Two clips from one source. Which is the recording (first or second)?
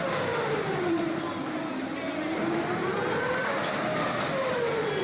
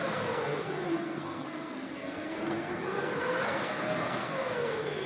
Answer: first